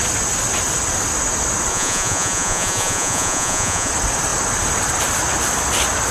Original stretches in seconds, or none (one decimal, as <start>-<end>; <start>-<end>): 0.0-1.7; 3.9-6.1